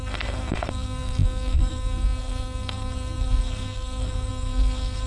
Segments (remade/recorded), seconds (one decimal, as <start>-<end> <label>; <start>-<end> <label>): 0.0-5.1 remade

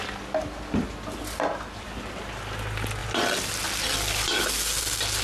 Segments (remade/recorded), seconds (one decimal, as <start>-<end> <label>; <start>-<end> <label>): 0.0-5.2 recorded